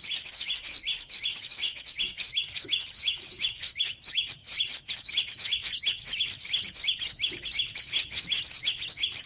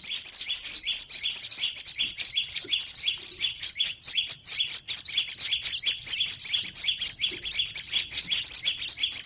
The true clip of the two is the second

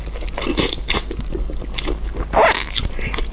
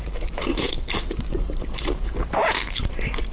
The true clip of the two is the first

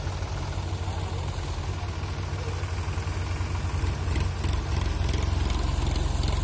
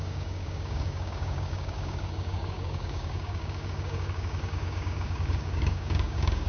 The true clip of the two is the first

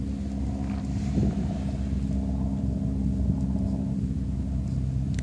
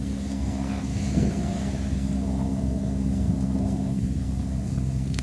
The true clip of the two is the first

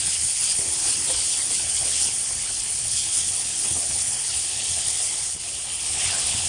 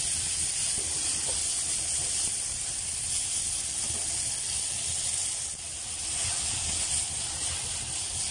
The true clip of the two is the second